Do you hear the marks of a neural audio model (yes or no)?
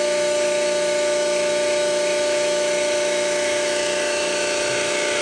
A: yes